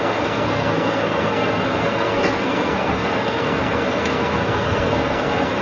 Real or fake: fake